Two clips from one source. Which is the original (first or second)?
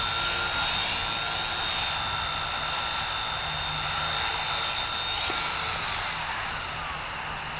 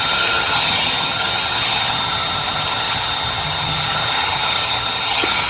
first